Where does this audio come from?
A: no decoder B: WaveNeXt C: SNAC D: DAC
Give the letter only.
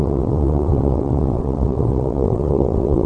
B